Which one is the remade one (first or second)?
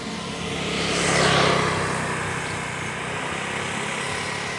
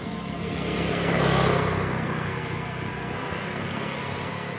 second